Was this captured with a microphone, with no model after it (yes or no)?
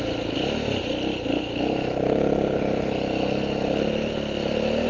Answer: yes